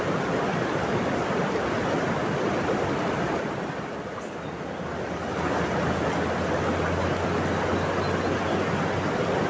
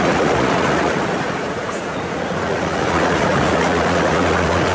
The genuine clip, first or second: first